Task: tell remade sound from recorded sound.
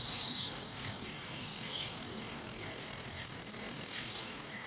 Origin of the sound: remade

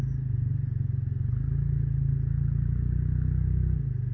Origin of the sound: recorded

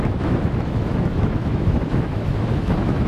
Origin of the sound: remade